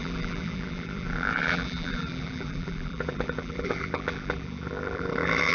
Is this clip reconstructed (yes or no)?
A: yes